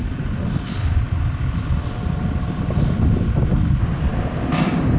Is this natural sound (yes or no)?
yes